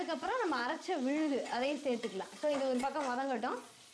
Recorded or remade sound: remade